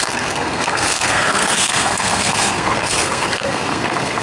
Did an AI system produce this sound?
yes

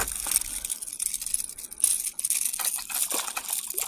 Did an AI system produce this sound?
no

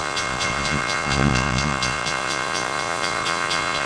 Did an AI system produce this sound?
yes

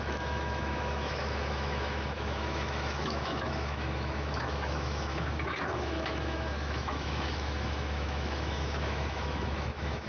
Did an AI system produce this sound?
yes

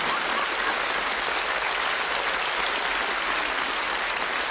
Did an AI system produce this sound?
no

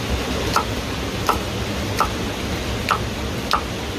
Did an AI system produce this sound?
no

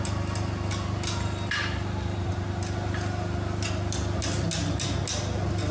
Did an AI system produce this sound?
no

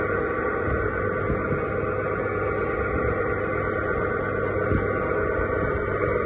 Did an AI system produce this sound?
no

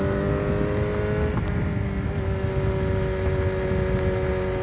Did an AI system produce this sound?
no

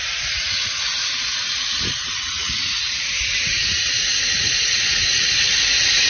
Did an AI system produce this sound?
yes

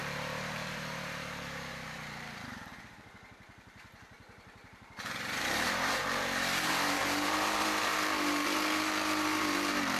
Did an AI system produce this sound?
yes